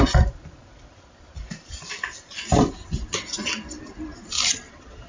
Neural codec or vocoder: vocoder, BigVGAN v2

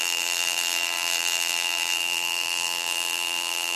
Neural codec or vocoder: vocoder, BigVGAN v2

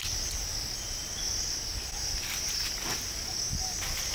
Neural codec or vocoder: none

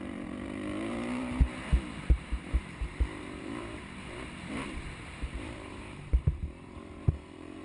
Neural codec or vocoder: vocoder, BigVGAN v2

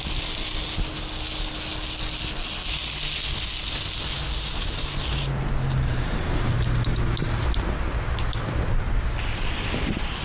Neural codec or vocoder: none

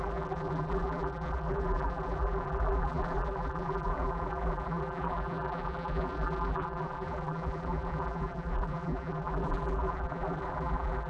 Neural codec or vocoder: vocoder, BigVGAN v2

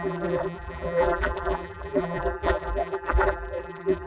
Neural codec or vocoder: vocoder, BigVGAN v2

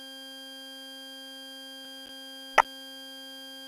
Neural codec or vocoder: none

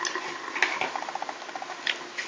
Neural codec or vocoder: none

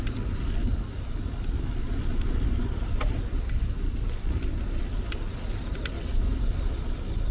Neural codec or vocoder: none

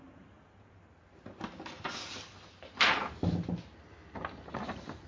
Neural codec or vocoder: none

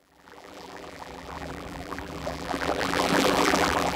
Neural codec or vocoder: vocoder, BigVGAN v2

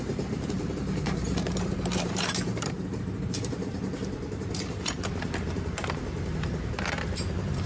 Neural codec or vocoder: vocoder, BigVGAN v2